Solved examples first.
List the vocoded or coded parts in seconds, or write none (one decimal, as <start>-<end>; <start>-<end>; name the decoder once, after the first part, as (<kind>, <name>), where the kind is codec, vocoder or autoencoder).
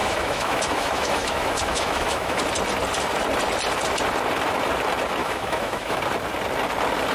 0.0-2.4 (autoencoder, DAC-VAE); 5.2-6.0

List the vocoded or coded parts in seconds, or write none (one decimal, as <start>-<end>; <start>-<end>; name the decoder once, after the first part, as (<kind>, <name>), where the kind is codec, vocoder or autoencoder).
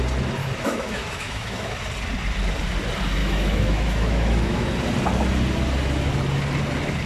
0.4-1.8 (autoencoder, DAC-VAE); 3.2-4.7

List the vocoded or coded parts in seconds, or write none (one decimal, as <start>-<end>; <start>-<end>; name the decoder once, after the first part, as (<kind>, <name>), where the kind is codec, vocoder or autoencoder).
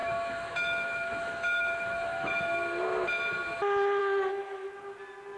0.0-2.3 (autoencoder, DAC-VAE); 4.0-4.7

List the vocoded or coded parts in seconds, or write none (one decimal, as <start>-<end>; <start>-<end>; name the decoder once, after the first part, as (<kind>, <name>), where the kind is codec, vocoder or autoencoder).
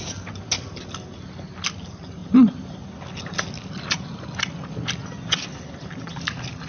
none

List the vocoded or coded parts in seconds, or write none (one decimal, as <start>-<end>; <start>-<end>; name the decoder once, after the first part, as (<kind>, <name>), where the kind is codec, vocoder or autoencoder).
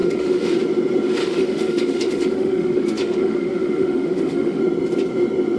0.0-0.5 (autoencoder, DAC-VAE); 1.2-4.6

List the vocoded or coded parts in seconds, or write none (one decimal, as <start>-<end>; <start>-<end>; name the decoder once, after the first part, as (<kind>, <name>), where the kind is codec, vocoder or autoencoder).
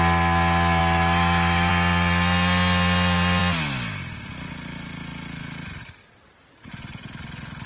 0.8-1.7 (autoencoder, DAC-VAE)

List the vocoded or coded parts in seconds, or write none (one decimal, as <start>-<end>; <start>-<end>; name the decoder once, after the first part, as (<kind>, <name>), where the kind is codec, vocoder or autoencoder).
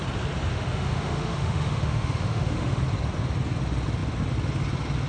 0.5-2.8 (autoencoder, DAC-VAE)